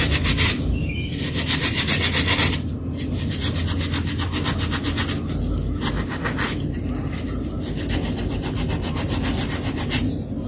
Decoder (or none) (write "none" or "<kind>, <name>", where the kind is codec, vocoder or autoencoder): none